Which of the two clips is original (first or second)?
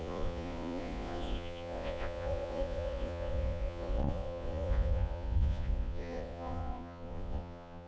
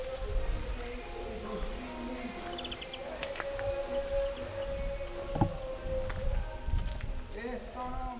second